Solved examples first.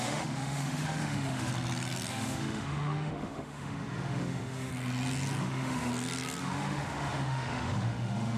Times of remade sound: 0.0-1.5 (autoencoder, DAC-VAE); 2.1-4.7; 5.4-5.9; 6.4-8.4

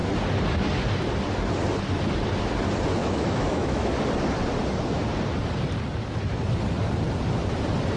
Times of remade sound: 3.0-3.9 (autoencoder, DAC-VAE)